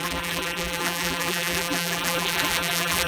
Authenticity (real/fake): fake